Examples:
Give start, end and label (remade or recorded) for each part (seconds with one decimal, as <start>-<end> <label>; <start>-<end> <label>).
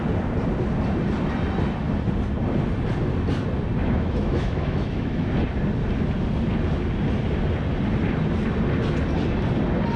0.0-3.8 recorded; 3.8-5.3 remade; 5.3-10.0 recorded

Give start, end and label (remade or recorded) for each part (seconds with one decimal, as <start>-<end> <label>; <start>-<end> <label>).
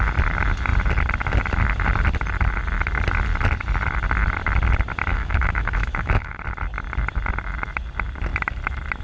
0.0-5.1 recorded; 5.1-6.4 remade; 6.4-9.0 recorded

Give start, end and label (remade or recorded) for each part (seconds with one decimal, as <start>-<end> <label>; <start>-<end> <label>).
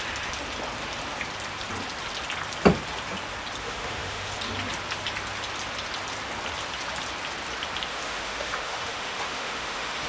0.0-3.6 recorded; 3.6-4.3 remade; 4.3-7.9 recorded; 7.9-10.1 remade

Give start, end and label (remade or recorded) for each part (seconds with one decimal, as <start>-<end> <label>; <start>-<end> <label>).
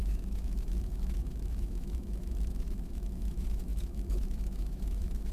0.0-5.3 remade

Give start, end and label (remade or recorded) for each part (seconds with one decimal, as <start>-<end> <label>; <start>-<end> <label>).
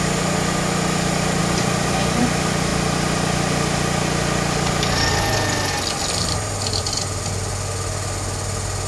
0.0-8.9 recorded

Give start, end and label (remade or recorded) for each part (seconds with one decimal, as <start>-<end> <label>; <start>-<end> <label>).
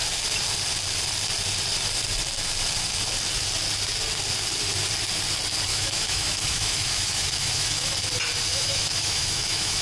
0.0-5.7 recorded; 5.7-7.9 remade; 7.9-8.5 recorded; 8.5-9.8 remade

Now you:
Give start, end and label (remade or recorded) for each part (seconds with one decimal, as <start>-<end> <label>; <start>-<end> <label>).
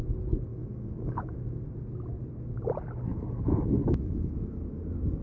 0.0-0.5 recorded; 0.5-1.4 remade; 1.4-3.1 recorded; 3.1-4.8 remade; 4.8-5.2 recorded